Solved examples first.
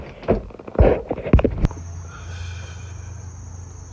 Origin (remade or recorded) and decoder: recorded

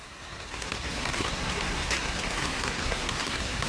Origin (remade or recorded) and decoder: remade, codec, SNAC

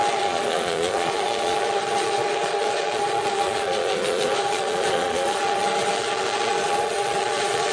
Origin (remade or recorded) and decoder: remade, vocoder, Vocos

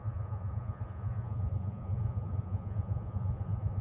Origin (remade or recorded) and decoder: remade, vocoder, Vocos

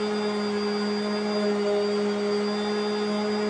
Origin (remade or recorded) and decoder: recorded